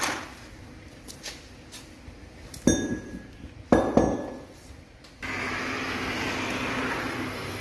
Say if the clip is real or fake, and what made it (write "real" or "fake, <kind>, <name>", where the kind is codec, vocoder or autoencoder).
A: real